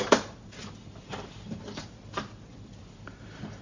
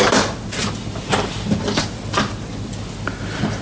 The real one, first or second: second